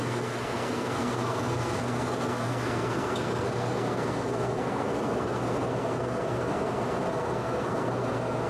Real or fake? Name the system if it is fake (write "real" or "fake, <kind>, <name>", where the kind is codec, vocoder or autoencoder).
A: fake, codec, SNAC